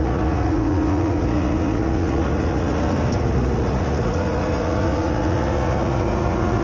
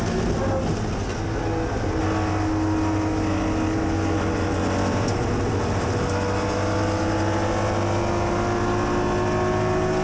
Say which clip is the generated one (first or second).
first